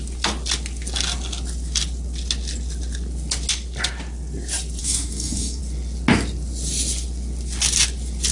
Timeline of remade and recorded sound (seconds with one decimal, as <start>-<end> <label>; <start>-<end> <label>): 0.0-4.8 recorded; 4.8-5.6 remade; 5.6-8.3 recorded